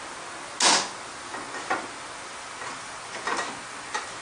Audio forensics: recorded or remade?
recorded